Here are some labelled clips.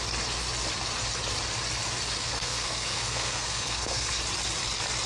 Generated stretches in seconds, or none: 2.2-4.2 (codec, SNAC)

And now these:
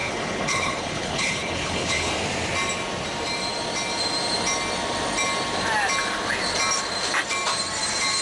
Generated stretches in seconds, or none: 0.0-2.1 (codec, HILCodec)

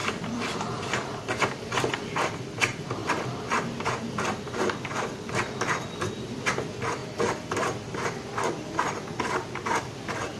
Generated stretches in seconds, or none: 0.0-1.5 (vocoder, BigVGAN v2); 3.0-6.4; 7.0-8.0

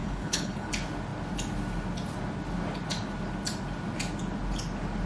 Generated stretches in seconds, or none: 0.0-0.7 (codec, HILCodec)

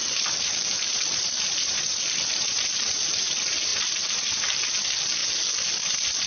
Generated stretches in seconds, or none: 0.0-5.2 (vocoder, BigVGAN v2); 5.7-6.3

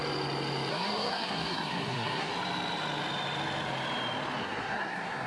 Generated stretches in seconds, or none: 0.7-2.3 (codec, SNAC); 4.4-5.3

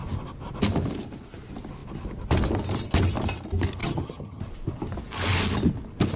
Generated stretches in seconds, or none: 3.8-4.4 (vocoder, HiFi-GAN)

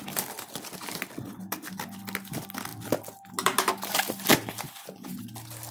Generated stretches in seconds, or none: none